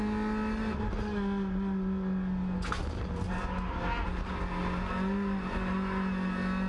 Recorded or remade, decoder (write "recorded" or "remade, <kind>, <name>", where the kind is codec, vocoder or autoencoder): recorded